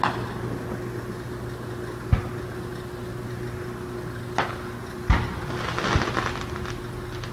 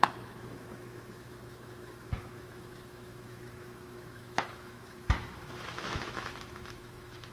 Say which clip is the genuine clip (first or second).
first